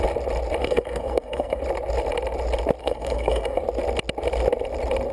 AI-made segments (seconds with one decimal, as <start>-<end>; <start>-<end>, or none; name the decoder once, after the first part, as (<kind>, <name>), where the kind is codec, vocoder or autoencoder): 0.6-1.6 (codec, SNAC); 2.8-3.6